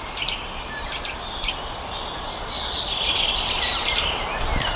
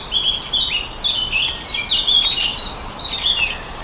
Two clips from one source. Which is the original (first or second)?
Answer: second